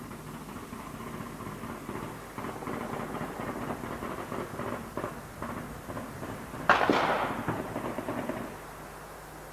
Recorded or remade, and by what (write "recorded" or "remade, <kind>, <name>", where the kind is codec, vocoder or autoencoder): recorded